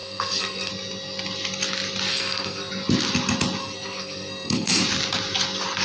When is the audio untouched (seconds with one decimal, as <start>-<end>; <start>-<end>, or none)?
0.7-2.1; 2.7-3.6; 4.8-5.8